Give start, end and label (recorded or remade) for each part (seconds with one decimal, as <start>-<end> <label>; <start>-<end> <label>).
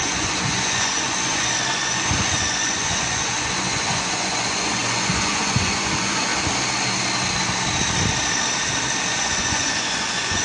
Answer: 0.0-6.3 remade; 6.3-9.1 recorded; 9.1-10.4 remade